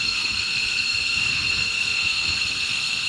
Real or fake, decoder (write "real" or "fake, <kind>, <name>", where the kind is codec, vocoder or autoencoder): fake, codec, SNAC